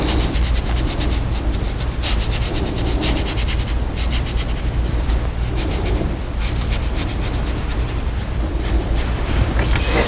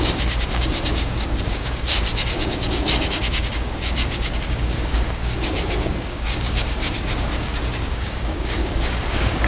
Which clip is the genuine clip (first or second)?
first